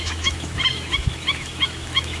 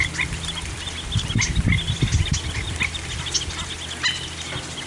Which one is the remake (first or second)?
first